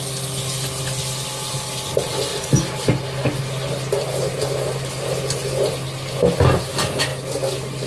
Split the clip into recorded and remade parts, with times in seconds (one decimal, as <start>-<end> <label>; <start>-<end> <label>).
0.0-7.9 recorded